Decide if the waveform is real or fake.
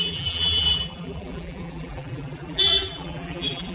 fake